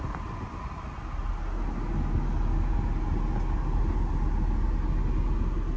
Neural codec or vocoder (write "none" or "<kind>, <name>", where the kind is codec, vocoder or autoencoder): none